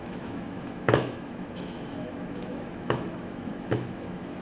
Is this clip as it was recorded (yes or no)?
no